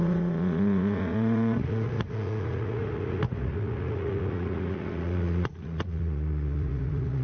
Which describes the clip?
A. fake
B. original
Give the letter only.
A